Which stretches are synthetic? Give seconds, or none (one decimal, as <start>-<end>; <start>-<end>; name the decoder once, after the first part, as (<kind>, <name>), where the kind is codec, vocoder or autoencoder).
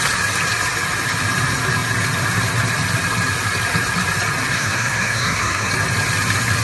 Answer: 4.5-5.7 (codec, SNAC)